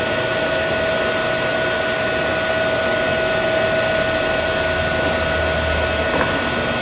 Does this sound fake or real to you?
real